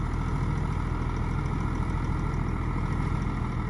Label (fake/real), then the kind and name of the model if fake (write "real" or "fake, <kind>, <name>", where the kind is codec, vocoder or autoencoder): real